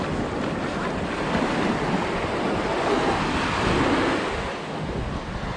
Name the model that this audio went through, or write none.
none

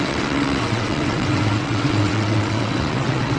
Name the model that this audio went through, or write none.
vocoder, WaveNeXt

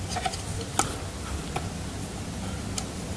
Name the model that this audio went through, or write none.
none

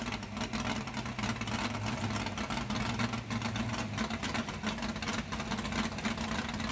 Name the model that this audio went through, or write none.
none